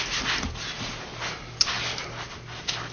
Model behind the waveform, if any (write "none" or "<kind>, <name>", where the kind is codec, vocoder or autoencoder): none